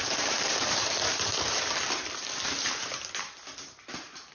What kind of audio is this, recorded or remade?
remade